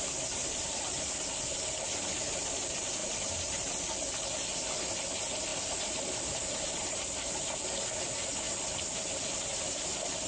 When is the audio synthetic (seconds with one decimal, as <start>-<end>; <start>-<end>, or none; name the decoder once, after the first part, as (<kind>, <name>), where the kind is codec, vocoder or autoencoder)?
3.0-3.7 (vocoder, BigVGAN v2); 5.5-7.5